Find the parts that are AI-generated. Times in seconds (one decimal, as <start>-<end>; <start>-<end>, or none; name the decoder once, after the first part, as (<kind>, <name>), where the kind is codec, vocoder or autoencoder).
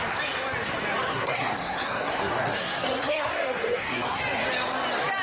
1.1-4.2 (codec, SNAC)